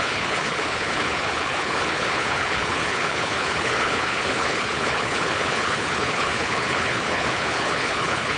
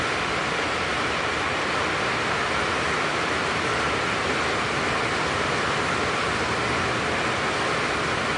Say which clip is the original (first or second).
second